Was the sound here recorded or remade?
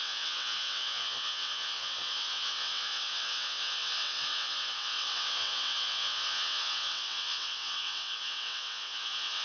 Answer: remade